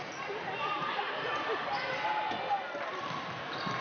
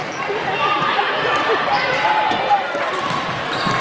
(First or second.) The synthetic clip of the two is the second